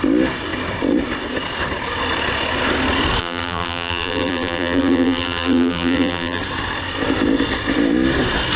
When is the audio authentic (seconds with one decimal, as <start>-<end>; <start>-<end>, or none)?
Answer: 0.0-3.2; 6.4-8.6